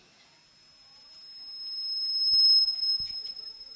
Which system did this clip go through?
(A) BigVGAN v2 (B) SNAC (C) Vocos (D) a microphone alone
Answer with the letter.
D